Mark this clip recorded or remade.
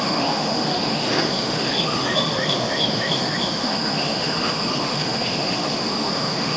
remade